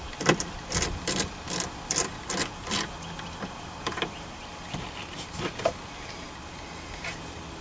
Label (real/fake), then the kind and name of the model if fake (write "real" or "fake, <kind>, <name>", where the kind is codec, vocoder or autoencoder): fake, vocoder, BigVGAN v2